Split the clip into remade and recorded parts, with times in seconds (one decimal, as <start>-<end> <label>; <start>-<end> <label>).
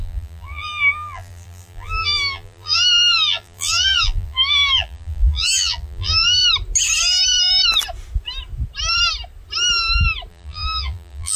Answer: 0.0-6.4 remade; 6.4-10.3 recorded; 10.3-11.4 remade